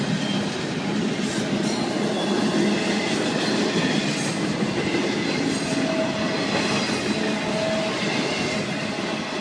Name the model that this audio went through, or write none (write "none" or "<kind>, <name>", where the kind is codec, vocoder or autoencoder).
none